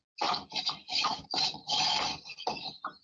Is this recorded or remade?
recorded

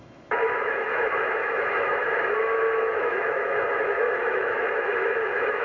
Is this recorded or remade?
remade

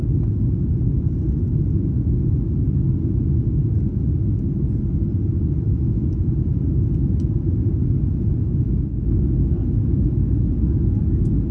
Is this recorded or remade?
recorded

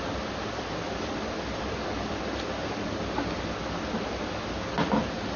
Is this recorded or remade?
recorded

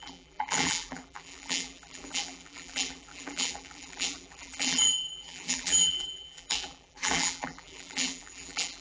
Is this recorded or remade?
remade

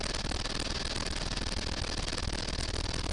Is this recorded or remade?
recorded